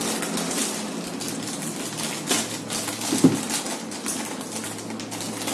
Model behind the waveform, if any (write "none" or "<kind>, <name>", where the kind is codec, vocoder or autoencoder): none